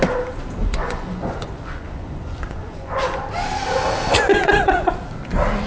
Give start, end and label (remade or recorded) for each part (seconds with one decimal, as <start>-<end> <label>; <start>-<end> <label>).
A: 0.0-0.6 recorded; 0.6-3.2 remade; 3.2-4.3 recorded; 4.3-4.9 remade; 4.9-5.7 recorded